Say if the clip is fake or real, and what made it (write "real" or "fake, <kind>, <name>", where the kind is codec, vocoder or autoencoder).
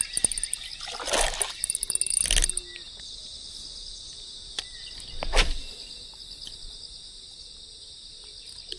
real